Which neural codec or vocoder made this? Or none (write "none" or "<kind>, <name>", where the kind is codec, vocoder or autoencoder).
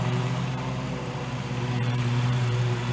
vocoder, BigVGAN v2